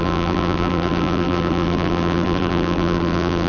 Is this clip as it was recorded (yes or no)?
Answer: no